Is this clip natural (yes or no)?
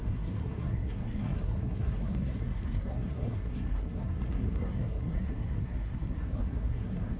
no